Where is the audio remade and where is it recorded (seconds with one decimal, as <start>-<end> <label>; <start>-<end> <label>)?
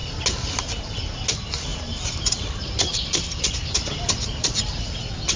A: 0.0-1.7 recorded; 1.7-4.8 remade; 4.8-5.4 recorded